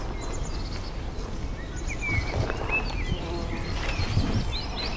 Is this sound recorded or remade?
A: recorded